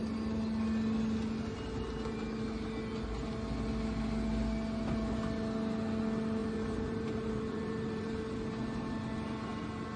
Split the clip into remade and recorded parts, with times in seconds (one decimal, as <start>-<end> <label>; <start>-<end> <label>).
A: 0.0-6.4 recorded; 6.4-8.2 remade; 8.2-10.0 recorded